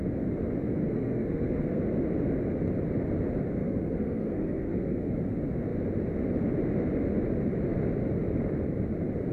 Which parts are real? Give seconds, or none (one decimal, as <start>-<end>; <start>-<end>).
0.0-0.8; 1.8-3.6; 5.1-9.3